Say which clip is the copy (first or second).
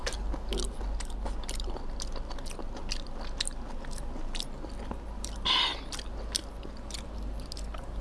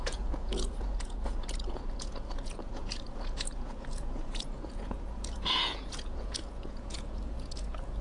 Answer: second